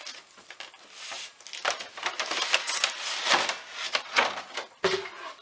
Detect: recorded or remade recorded